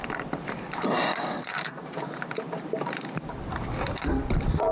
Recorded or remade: remade